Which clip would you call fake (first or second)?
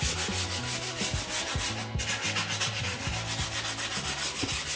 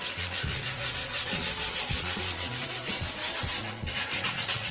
second